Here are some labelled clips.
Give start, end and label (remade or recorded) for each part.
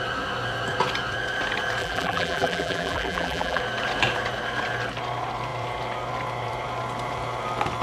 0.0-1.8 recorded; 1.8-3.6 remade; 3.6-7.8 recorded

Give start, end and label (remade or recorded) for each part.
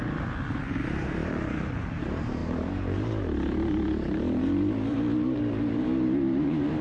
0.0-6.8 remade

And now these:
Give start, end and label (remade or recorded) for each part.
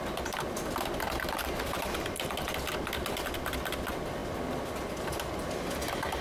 0.0-6.2 recorded